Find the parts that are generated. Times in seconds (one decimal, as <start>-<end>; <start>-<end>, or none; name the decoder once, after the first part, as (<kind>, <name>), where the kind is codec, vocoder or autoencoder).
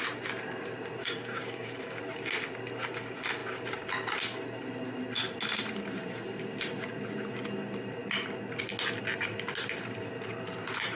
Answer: 1.0-2.0 (codec, DAC)